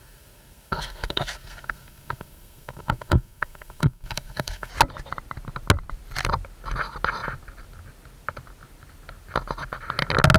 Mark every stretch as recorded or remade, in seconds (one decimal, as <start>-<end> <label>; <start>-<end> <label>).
0.0-4.7 remade; 4.7-10.4 recorded

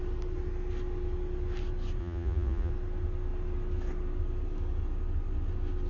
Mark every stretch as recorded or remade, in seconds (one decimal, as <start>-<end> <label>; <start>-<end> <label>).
0.0-2.0 recorded; 2.0-2.7 remade; 2.7-5.9 recorded

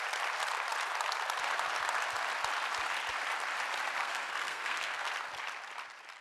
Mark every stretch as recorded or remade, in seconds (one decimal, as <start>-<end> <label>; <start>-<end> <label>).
0.0-4.0 recorded; 4.0-5.1 remade; 5.1-6.2 recorded

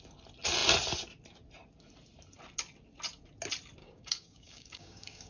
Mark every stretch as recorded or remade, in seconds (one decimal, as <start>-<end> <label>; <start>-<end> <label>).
0.0-3.8 recorded; 3.8-5.3 remade

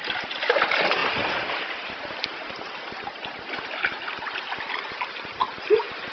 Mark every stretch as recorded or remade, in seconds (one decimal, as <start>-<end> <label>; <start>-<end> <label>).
0.0-6.1 recorded